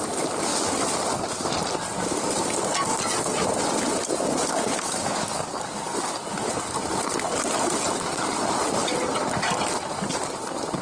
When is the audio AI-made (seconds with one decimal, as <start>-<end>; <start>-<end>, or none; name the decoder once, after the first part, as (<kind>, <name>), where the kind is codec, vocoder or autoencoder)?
4.5-5.9 (codec, DAC)